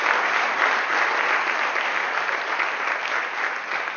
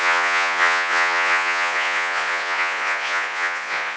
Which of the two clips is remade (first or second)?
second